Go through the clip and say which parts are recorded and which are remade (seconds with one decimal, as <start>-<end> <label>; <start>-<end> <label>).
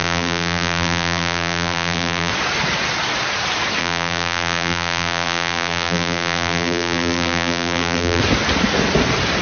0.0-2.3 remade; 2.3-3.8 recorded; 3.8-8.2 remade; 8.2-9.4 recorded